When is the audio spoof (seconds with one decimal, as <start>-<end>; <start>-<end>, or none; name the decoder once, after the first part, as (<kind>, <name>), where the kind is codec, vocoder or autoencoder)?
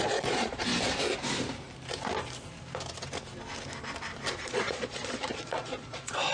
0.0-0.7 (vocoder, Vocos); 4.4-6.3